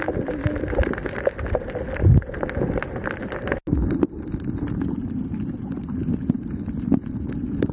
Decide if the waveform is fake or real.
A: real